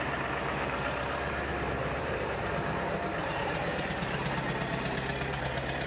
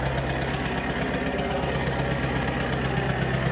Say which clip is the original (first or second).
second